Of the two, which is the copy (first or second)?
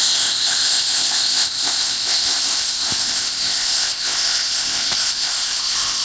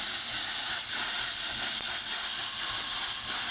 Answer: first